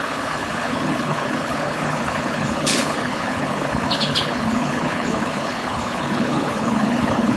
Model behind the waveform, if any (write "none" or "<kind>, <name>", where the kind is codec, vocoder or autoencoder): codec, HILCodec